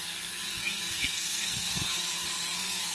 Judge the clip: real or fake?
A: fake